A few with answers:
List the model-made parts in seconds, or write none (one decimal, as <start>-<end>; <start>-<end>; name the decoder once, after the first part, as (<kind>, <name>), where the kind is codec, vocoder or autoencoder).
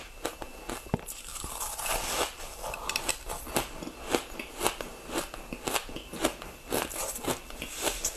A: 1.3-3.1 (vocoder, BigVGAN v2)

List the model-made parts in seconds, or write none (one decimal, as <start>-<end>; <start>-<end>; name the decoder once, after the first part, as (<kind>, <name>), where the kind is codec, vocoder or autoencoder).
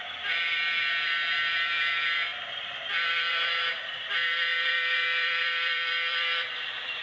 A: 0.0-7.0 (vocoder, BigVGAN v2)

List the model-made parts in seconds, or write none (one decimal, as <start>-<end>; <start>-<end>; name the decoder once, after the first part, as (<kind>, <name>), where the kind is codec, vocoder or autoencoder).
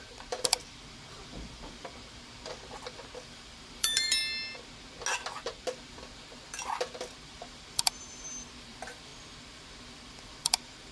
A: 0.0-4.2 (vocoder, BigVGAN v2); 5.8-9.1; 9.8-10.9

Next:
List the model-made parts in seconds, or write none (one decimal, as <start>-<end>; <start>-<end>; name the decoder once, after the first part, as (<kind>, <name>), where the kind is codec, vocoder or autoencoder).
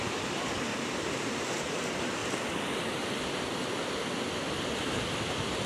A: 0.7-1.6 (vocoder, BigVGAN v2)